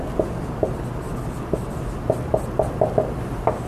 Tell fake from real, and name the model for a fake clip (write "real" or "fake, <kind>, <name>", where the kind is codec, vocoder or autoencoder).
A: real